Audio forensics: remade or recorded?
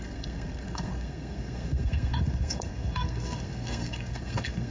remade